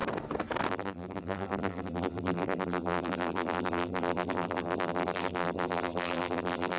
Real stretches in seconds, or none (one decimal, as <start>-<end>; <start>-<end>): 0.0-0.7